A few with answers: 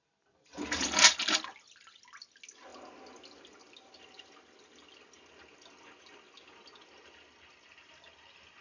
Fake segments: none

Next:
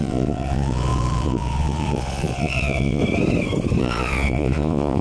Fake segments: 0.0-3.0 (vocoder, Vocos); 3.8-5.0

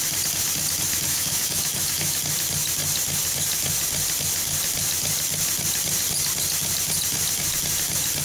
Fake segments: 1.1-2.2 (autoencoder, DAC-VAE)

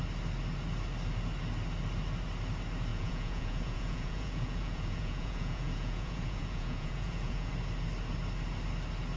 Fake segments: 2.9-7.5 (vocoder, Vocos)